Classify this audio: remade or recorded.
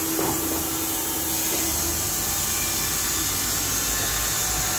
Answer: recorded